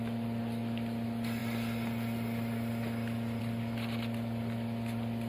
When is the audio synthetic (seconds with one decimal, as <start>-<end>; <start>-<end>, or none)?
none